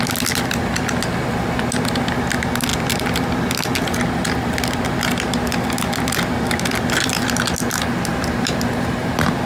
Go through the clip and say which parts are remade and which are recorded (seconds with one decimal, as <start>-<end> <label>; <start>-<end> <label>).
0.0-8.1 recorded; 8.1-8.7 remade; 8.7-9.5 recorded